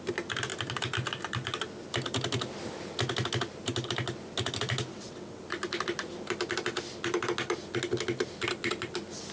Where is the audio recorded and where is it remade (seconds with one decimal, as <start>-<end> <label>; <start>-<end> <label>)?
0.0-4.9 recorded; 4.9-5.4 remade; 5.4-9.3 recorded